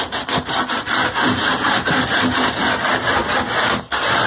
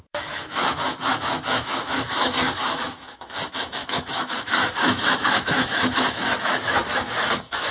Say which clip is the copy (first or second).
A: second